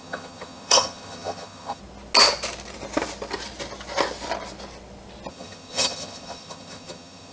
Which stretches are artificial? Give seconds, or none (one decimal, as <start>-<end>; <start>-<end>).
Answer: 0.0-1.8; 5.3-7.3